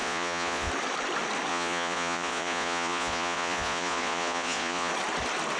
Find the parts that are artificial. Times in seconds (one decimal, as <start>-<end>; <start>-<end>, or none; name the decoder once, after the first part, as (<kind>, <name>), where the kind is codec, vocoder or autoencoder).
0.0-0.7 (vocoder, Vocos); 1.5-4.9